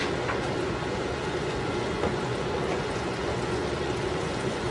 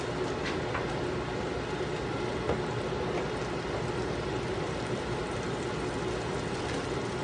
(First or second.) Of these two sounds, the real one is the second